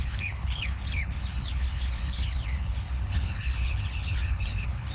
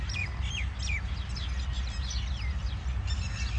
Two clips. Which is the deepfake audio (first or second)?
first